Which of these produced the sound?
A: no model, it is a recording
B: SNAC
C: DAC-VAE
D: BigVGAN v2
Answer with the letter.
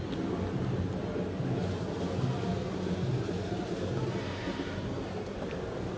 A